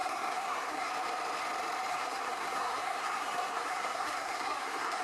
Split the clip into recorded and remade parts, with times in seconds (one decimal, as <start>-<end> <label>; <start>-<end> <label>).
0.0-0.9 remade; 0.9-1.9 recorded; 1.9-5.0 remade